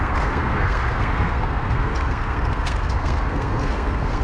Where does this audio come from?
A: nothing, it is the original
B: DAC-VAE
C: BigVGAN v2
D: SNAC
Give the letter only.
D